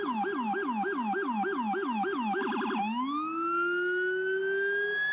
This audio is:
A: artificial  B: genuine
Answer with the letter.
B